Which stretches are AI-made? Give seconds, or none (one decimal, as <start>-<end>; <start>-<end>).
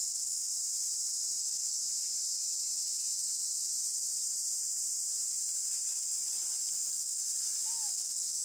0.0-0.5; 1.4-1.8; 6.7-7.2; 7.9-8.4